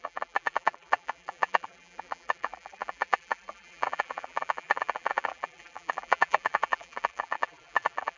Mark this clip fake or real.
fake